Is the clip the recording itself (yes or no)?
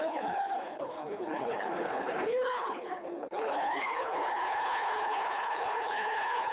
no